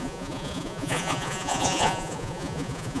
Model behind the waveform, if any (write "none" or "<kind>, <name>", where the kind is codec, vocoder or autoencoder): vocoder, Vocos